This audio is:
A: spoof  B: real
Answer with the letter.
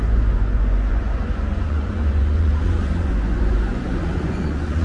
A